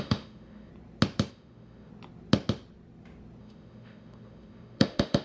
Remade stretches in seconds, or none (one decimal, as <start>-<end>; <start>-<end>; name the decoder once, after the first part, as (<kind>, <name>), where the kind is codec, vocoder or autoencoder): 0.0-0.7 (autoencoder, DAC-VAE); 1.3-1.9; 3.4-5.2